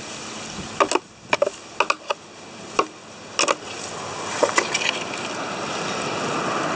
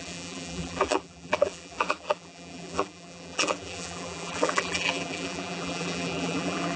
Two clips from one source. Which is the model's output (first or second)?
second